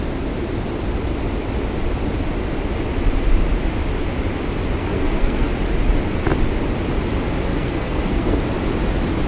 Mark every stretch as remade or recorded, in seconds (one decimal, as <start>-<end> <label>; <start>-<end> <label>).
0.0-4.8 recorded; 4.8-5.5 remade; 5.5-7.5 recorded; 7.5-8.4 remade; 8.4-9.3 recorded